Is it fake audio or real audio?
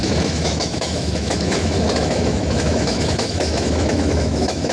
fake